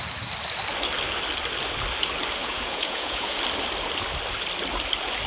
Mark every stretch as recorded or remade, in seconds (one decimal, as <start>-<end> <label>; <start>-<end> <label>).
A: 0.0-2.4 recorded; 2.4-3.4 remade; 3.4-5.3 recorded